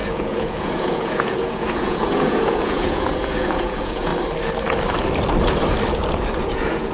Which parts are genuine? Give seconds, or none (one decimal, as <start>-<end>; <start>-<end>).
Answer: 4.1-6.4